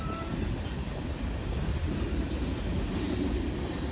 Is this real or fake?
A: real